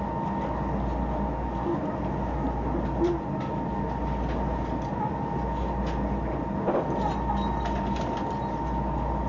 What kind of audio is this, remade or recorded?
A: recorded